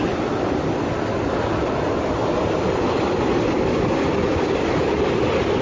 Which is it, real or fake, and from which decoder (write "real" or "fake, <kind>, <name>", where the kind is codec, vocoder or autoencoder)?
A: real